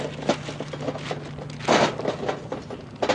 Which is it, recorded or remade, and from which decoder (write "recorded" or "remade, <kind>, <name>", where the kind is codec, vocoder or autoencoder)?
recorded